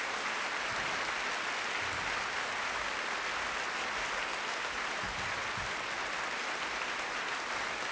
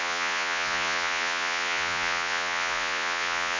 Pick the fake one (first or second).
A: second